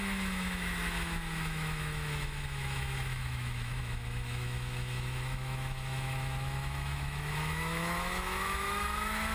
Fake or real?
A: fake